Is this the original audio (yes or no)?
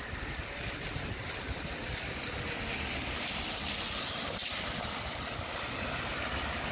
yes